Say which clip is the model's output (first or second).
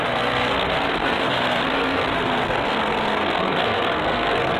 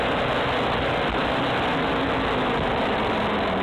first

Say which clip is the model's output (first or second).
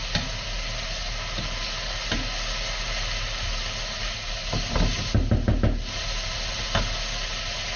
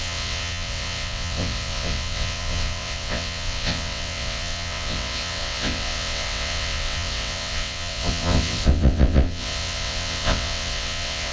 second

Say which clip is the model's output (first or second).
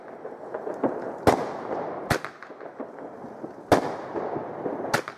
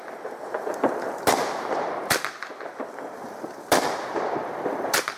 second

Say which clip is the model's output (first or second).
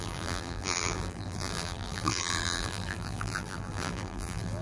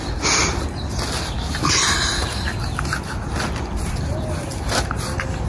first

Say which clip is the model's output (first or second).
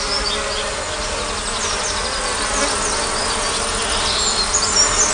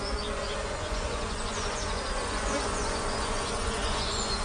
second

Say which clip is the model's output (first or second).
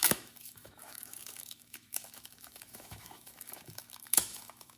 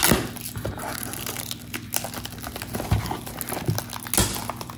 first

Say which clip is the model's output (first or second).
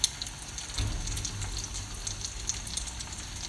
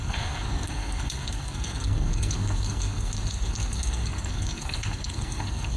second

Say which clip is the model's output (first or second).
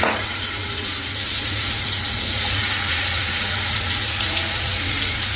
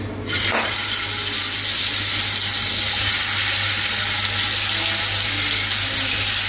first